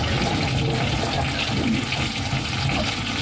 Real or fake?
real